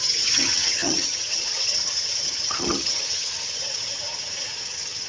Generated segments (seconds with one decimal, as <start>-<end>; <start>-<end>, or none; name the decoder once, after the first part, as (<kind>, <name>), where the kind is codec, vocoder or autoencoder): 0.0-5.1 (vocoder, HiFi-GAN)